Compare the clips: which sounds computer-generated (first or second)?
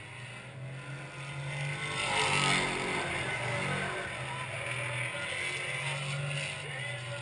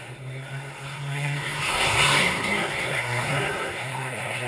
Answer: second